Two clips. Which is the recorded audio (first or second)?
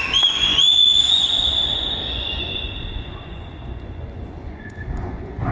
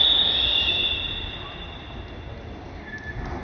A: second